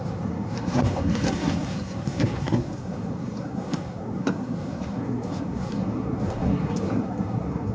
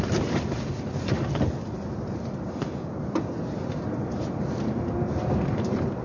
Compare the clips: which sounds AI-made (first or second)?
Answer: first